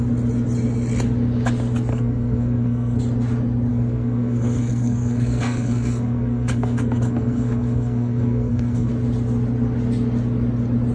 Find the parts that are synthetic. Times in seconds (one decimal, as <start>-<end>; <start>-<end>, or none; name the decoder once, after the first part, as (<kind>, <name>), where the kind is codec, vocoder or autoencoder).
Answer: 1.9-3.0 (codec, SNAC); 3.7-8.9